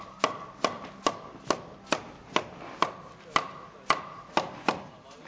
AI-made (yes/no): no